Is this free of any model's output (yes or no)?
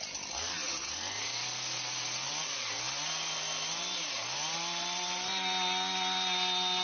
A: yes